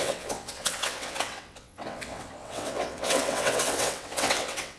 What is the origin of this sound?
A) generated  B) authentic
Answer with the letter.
A